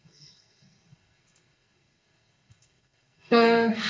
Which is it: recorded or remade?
remade